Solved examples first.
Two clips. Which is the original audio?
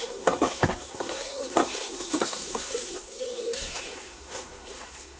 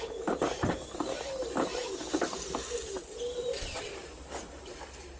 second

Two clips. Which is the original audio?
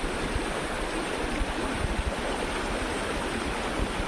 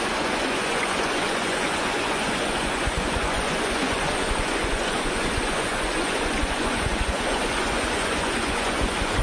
first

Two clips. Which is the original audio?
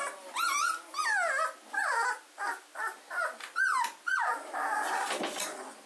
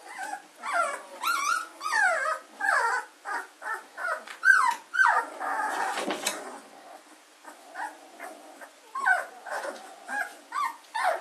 first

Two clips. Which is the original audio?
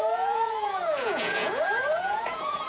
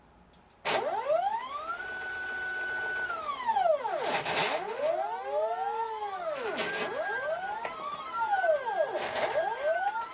second